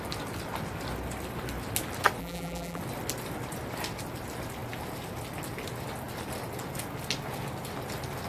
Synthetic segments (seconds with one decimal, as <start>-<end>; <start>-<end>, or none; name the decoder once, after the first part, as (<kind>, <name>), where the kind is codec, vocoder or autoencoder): 2.2-2.8 (vocoder, BigVGAN v2)